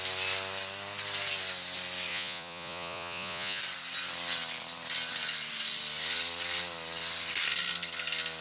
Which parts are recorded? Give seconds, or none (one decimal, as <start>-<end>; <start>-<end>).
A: 0.0-2.1; 3.6-8.4